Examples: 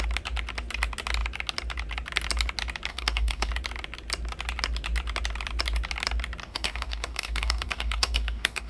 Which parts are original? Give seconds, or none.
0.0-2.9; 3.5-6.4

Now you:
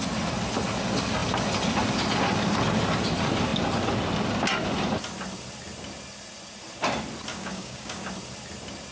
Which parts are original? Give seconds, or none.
0.0-7.3; 8.1-8.9

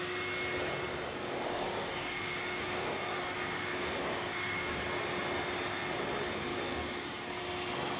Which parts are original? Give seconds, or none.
0.0-0.9; 4.8-6.5; 7.4-8.0

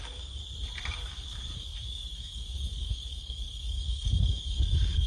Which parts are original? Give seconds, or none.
0.4-0.9

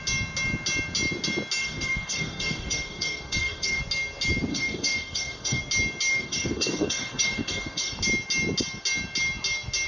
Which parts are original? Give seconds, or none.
0.0-1.6; 3.8-4.5; 5.6-6.1; 8.0-9.9

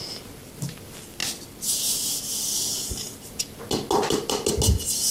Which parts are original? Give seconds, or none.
0.0-5.1

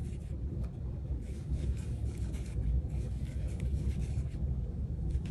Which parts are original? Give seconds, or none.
0.0-0.5

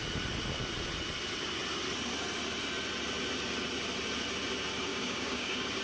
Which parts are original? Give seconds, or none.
0.0-4.9